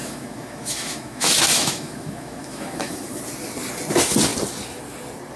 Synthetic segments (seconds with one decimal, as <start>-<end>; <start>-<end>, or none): 0.0-3.2